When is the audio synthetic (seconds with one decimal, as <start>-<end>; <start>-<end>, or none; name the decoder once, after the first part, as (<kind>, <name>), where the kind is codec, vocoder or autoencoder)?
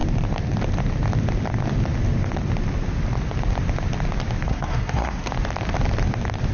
4.5-5.3 (codec, SNAC)